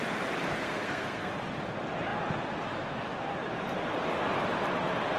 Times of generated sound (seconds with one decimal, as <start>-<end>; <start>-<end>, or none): 0.6-1.3